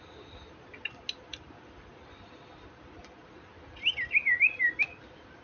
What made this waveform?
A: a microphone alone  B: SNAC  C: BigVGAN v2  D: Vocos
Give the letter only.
A